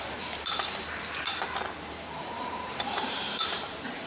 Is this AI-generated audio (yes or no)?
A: yes